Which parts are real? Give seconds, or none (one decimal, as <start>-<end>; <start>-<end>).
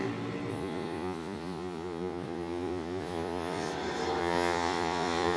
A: 0.0-0.5; 3.7-4.2